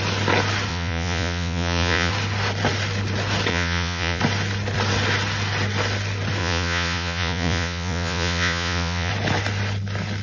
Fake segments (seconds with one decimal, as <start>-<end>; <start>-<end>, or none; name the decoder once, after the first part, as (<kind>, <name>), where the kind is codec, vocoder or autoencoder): 0.7-2.1 (vocoder, Vocos); 3.5-4.2; 6.4-9.1